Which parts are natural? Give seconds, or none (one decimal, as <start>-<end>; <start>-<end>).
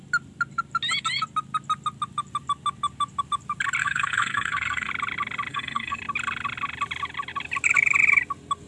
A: 0.0-3.8; 4.9-5.5; 6.0-8.7